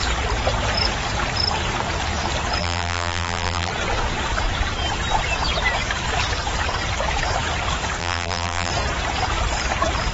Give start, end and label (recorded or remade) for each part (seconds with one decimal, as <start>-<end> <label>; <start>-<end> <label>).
0.0-2.6 recorded; 2.6-3.7 remade; 3.7-8.0 recorded; 8.0-8.7 remade; 8.7-10.1 recorded